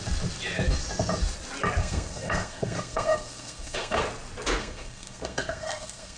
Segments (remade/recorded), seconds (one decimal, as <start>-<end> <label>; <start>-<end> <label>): 0.0-1.8 recorded; 1.8-4.0 remade; 4.0-4.6 recorded; 4.6-6.2 remade